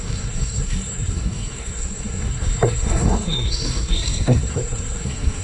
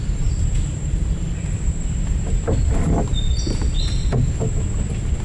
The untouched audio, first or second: second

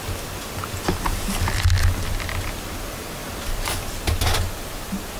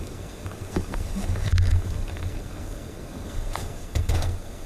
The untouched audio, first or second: first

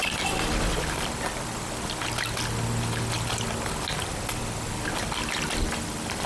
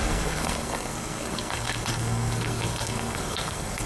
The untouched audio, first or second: first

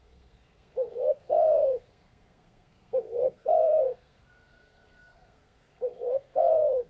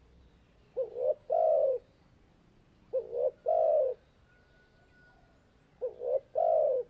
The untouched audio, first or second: second